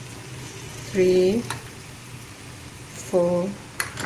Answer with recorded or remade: recorded